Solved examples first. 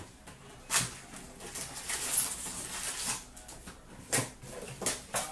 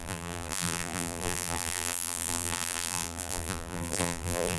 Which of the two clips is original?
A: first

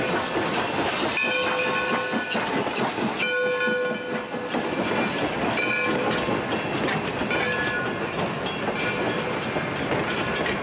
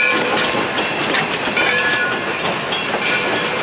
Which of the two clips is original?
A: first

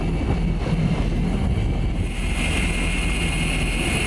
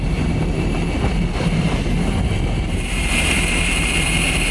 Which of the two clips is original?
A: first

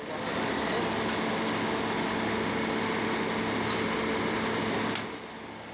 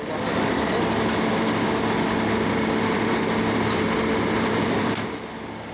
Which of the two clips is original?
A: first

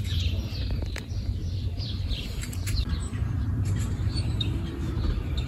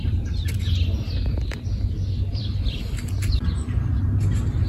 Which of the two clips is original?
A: second